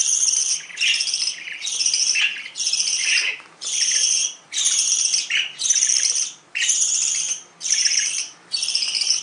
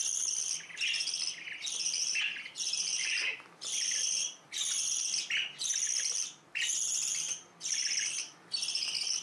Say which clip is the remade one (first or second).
first